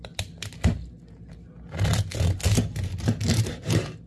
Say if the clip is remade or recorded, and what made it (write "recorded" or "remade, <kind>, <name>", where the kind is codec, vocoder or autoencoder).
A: recorded